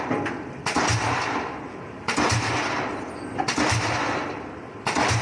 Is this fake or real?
real